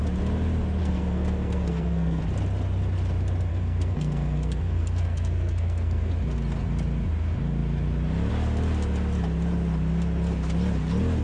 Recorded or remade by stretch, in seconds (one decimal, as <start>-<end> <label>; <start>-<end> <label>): 0.0-0.8 recorded; 0.8-2.2 remade; 2.2-3.5 recorded; 3.5-6.1 remade; 6.1-11.2 recorded

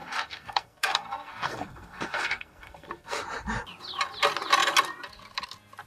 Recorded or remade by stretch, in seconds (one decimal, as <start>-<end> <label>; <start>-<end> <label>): 0.0-3.2 remade; 3.2-5.9 recorded

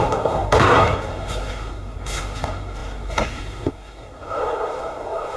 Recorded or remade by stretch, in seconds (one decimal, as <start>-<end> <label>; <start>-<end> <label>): 0.0-5.4 remade

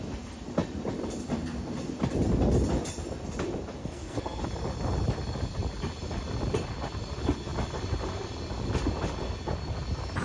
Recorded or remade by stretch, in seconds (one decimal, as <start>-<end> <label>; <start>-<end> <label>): 0.0-3.8 recorded; 3.8-4.4 remade; 4.4-10.2 recorded

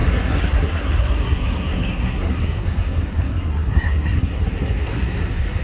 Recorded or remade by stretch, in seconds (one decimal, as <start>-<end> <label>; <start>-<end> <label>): 0.0-5.6 remade

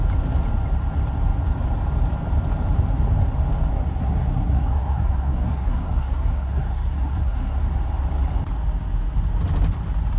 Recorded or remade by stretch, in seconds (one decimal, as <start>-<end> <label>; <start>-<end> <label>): 0.0-3.7 recorded; 3.7-7.6 remade; 7.6-10.2 recorded